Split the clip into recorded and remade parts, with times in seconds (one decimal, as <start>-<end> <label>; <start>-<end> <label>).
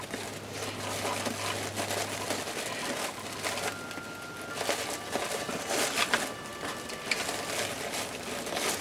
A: 0.0-8.8 recorded